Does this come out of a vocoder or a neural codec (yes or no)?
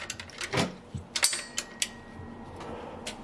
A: no